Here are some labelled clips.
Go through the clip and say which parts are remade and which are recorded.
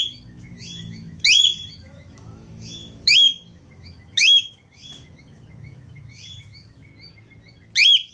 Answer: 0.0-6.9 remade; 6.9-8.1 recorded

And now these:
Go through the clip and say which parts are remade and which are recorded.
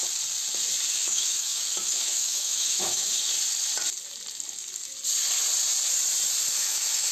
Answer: 0.0-0.9 recorded; 0.9-3.3 remade; 3.3-6.5 recorded; 6.5-7.1 remade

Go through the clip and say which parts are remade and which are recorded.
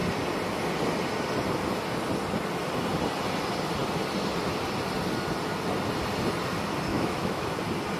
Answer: 0.0-6.9 recorded; 6.9-7.5 remade; 7.5-8.0 recorded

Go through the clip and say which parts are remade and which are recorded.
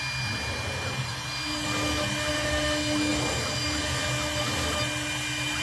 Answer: 0.0-5.6 recorded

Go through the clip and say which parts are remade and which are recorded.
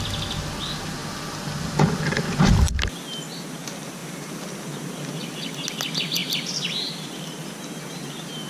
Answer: 0.0-8.5 recorded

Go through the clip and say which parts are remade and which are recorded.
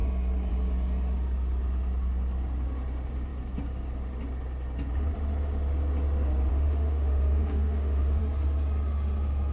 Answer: 0.0-6.5 recorded; 6.5-8.2 remade; 8.2-9.5 recorded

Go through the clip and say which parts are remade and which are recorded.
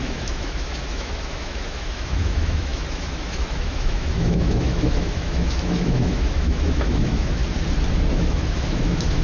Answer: 0.0-7.4 remade; 7.4-8.1 recorded; 8.1-9.2 remade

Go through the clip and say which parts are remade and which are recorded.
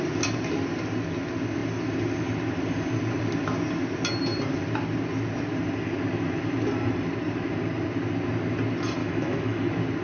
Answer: 0.0-9.0 recorded; 9.0-9.6 remade; 9.6-10.0 recorded